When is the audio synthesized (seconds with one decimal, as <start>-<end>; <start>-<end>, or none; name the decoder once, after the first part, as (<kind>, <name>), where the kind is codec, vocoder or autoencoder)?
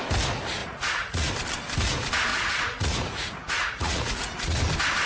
0.6-1.3 (vocoder, Vocos); 2.3-4.6